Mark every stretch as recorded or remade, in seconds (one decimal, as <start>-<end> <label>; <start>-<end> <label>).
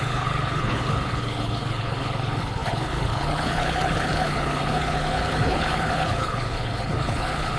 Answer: 0.0-7.6 remade